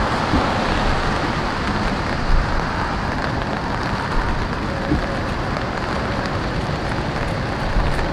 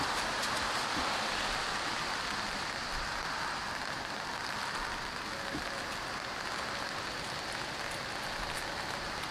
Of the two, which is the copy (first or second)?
first